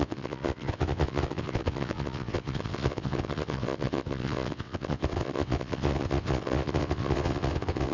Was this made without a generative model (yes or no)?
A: no